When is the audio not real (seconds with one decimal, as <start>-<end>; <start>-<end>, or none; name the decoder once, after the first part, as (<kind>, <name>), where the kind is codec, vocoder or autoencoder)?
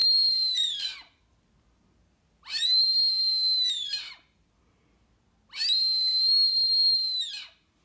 none